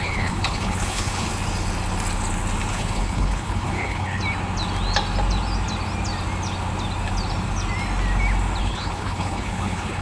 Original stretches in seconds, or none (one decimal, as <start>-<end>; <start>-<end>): 1.3-2.7; 4.2-8.6